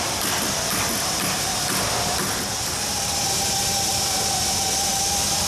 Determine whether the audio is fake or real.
real